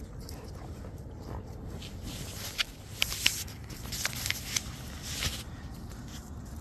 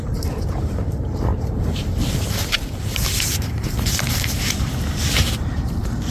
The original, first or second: first